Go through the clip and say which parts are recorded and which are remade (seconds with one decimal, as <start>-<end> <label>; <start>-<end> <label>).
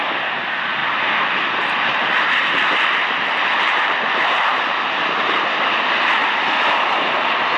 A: 0.0-0.8 recorded; 0.8-1.4 remade; 1.4-1.9 recorded; 1.9-5.5 remade; 5.5-7.6 recorded